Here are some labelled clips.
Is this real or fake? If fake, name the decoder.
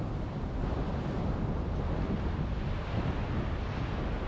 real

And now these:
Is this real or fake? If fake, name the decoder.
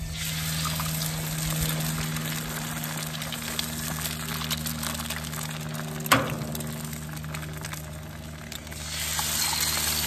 real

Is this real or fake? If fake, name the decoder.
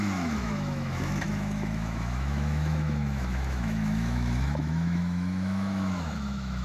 fake, autoencoder, DAC-VAE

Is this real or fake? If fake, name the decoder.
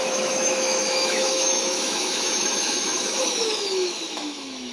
fake, autoencoder, DAC-VAE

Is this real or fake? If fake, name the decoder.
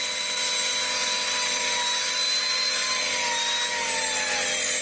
real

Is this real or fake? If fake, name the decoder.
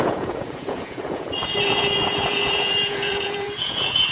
fake, vocoder, Vocos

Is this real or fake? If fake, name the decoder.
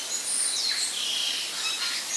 real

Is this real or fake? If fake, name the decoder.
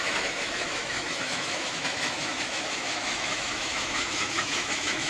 fake, autoencoder, DAC-VAE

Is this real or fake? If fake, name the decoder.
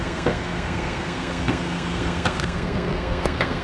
fake, codec, SNAC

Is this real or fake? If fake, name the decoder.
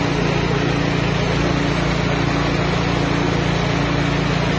real